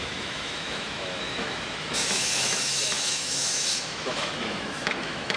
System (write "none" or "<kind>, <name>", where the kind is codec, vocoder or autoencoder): autoencoder, DAC-VAE